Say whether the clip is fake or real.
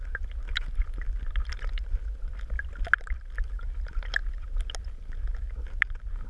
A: real